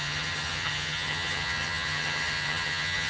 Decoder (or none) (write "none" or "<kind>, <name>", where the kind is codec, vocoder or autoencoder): vocoder, HiFi-GAN